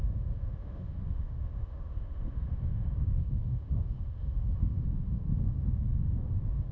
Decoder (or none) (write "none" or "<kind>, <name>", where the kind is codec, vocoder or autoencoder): autoencoder, DAC-VAE